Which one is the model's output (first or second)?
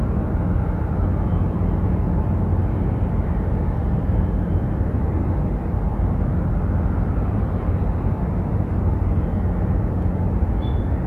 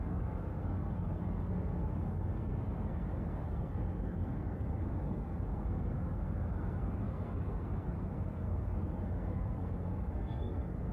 second